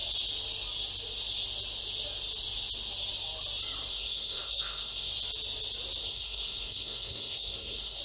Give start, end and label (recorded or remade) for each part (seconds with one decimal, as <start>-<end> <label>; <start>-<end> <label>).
0.0-3.9 recorded; 3.9-5.1 remade; 5.1-6.0 recorded; 6.0-8.0 remade